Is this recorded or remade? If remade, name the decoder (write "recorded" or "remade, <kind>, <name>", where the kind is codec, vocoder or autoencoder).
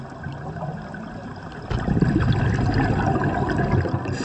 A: recorded